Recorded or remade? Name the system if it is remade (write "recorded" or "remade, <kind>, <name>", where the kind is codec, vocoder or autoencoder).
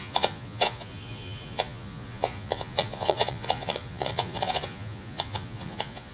remade, vocoder, Vocos